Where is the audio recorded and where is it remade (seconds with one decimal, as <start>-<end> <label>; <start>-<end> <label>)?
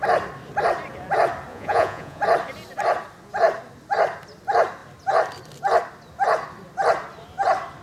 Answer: 0.0-1.5 recorded; 1.5-2.2 remade; 2.2-7.8 recorded